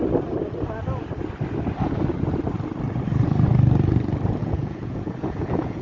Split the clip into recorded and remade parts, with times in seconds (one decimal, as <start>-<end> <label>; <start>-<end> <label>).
0.0-4.4 recorded; 4.4-5.8 remade